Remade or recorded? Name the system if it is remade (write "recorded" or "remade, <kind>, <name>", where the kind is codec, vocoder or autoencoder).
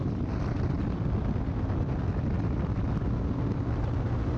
recorded